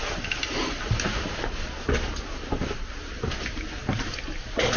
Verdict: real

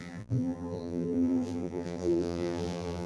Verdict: fake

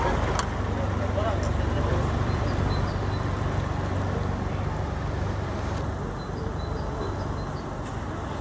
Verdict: real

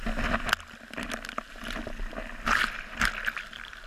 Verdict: real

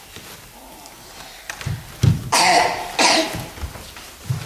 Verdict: real